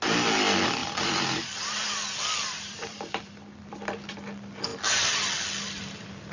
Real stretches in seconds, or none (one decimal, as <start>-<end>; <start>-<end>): 0.0-0.8; 4.1-6.3